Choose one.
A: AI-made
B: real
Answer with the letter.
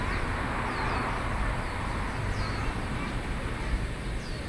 B